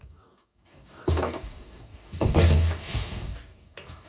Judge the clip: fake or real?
fake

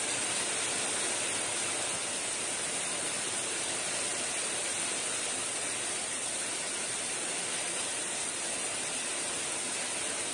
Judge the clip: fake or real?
real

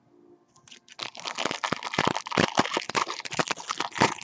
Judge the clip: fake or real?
real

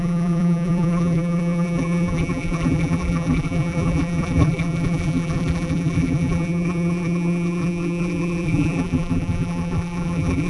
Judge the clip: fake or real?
fake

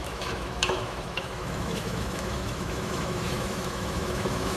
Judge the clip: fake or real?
fake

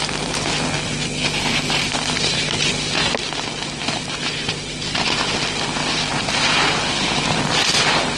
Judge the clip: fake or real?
real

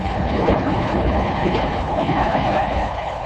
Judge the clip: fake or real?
fake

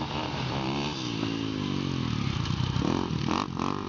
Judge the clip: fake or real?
real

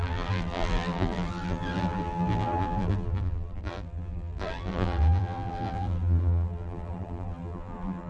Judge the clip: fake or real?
fake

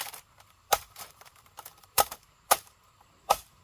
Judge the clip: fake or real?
fake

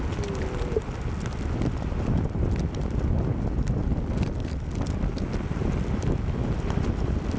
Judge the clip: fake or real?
real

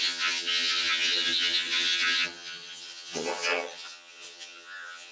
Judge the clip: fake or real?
fake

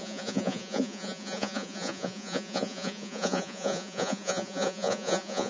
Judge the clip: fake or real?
fake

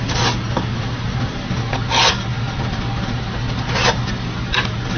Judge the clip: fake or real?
real